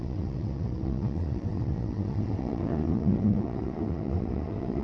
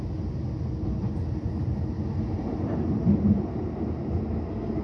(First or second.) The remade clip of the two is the first